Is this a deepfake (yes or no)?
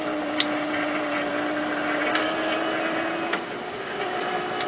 no